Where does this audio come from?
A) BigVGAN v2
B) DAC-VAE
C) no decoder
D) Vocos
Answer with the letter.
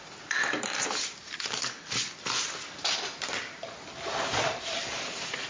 C